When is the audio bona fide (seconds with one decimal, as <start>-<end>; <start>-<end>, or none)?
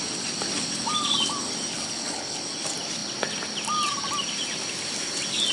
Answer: 0.0-1.7; 2.4-5.5